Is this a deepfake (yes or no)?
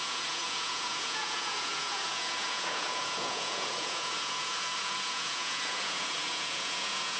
yes